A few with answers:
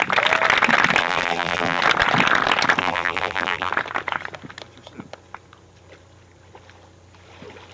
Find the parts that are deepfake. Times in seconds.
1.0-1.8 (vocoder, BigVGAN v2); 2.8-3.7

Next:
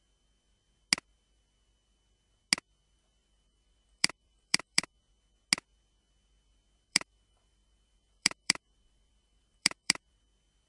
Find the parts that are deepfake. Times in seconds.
3.2-5.0 (vocoder, BigVGAN v2); 6.9-10.2